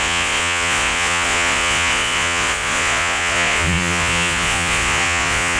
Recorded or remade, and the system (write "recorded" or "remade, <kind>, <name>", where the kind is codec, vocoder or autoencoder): remade, vocoder, Vocos